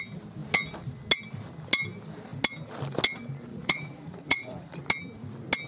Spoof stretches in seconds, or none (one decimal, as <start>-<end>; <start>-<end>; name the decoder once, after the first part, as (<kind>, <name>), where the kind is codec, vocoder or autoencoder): 3.5-4.8 (vocoder, Vocos)